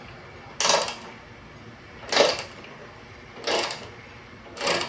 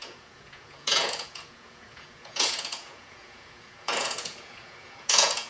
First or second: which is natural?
first